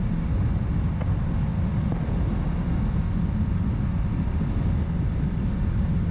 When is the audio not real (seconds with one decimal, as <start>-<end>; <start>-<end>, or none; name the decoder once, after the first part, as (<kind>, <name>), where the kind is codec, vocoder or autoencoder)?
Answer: none